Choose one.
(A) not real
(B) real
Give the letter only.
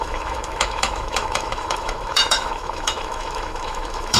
A